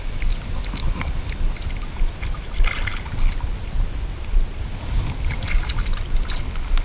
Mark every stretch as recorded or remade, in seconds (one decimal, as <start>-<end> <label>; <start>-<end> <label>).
0.0-6.8 recorded